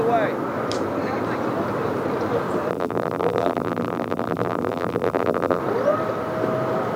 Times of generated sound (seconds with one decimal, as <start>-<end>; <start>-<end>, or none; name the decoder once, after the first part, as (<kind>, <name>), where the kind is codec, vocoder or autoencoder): 2.7-5.6 (vocoder, BigVGAN v2)